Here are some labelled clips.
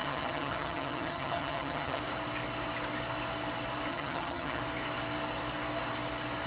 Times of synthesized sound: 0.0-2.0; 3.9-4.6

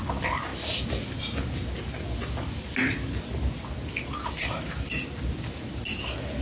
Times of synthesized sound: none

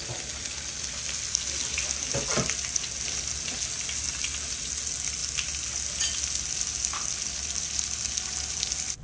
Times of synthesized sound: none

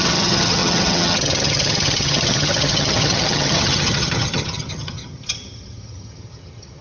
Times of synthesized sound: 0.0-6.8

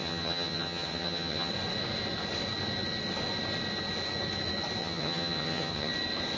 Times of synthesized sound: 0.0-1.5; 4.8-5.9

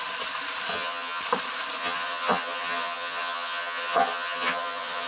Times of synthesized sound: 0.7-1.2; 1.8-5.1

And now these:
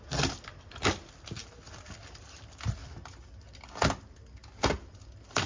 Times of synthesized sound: none